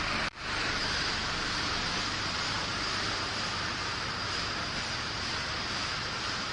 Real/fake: fake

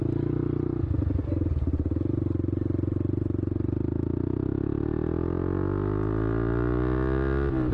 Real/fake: real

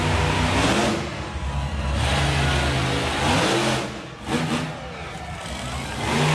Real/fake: real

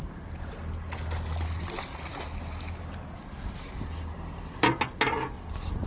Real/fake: real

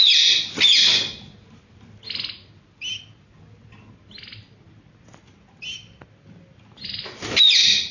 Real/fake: real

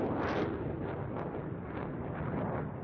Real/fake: real